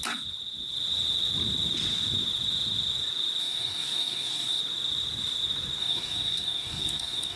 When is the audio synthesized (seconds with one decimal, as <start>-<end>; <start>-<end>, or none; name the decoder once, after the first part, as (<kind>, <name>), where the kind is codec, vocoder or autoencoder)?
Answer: 3.4-4.6 (codec, DAC); 5.8-7.4